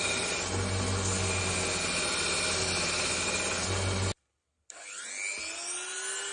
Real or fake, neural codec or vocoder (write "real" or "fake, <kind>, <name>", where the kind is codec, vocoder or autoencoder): real